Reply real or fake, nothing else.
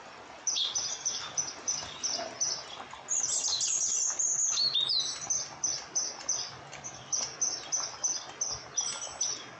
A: real